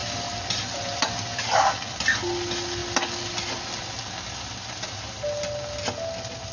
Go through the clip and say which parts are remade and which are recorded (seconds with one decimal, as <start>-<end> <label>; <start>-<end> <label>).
0.0-6.5 recorded